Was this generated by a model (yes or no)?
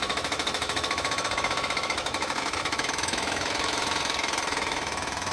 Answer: yes